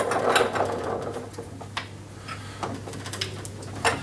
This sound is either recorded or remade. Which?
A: recorded